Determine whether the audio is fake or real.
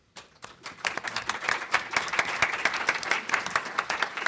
real